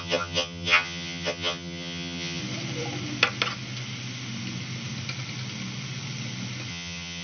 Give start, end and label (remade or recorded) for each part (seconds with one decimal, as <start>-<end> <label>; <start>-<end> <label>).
0.0-2.4 remade; 2.4-6.7 recorded; 6.7-7.2 remade